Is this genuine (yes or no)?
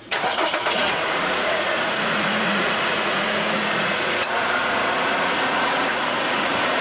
no